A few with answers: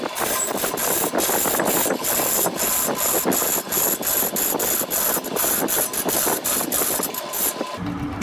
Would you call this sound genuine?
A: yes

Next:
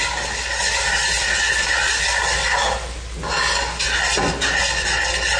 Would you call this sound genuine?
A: yes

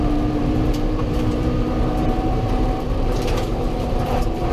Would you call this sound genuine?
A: no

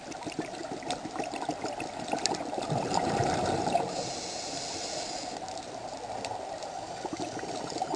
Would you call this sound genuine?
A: yes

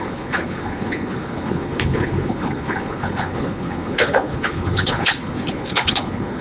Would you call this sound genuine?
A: no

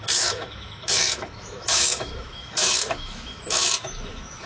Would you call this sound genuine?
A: no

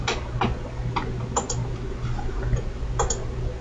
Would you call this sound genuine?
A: yes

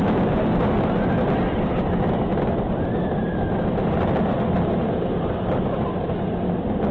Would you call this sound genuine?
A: yes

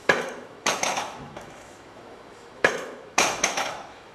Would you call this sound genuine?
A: no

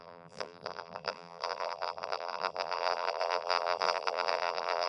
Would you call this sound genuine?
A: no